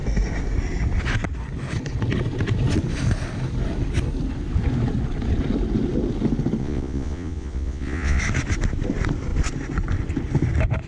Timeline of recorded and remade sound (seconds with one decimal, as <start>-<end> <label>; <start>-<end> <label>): 0.0-6.6 recorded; 6.6-8.2 remade; 8.2-10.9 recorded